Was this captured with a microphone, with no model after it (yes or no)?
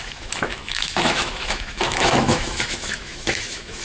no